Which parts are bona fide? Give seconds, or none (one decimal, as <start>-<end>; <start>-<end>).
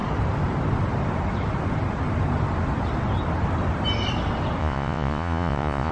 0.0-4.6